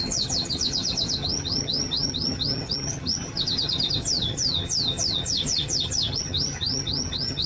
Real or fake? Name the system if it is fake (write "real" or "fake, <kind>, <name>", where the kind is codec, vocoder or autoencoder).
fake, vocoder, HiFi-GAN